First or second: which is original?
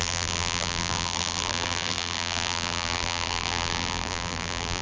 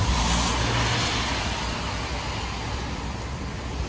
second